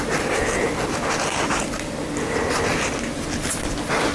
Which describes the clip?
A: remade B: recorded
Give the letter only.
B